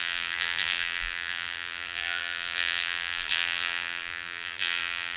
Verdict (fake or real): fake